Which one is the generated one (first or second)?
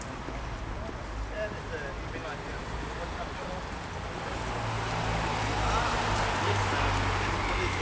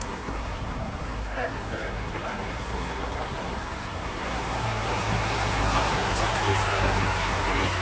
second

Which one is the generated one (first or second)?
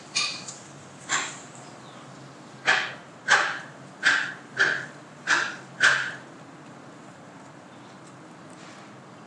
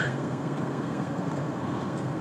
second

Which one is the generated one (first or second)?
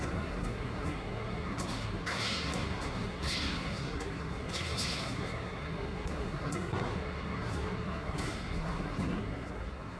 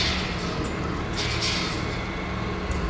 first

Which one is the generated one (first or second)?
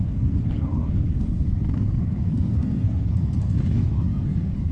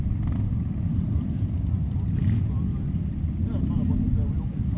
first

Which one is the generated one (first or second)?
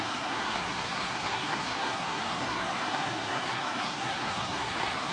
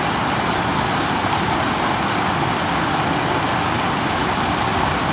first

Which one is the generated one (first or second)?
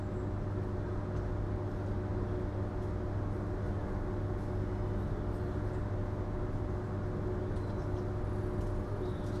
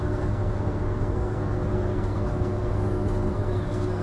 second